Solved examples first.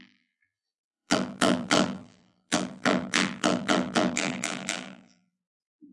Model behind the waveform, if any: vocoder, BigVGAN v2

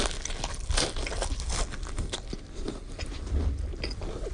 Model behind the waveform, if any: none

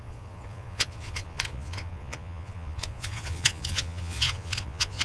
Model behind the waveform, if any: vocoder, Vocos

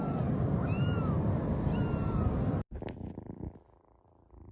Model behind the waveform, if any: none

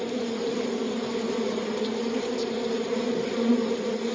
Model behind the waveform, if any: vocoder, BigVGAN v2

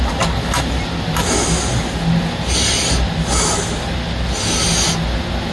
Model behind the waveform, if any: none